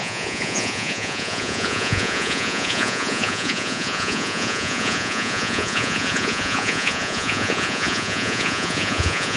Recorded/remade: remade